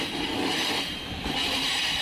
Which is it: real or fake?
fake